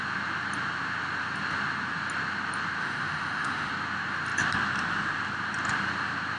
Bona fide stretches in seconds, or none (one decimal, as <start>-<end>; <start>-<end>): 0.0-2.8; 3.7-6.4